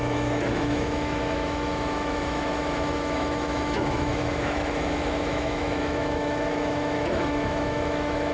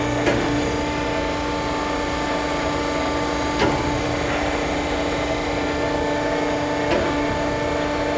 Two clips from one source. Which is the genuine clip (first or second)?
second